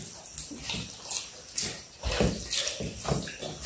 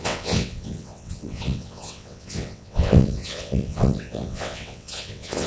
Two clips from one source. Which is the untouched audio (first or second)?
first